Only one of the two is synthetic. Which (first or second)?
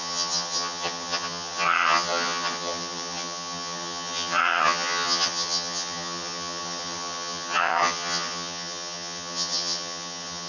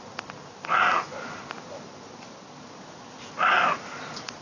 first